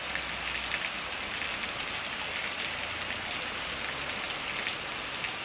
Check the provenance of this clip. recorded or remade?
recorded